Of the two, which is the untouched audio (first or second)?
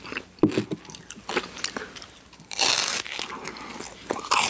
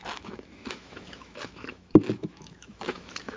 first